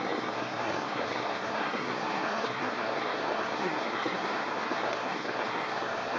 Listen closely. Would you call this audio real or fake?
fake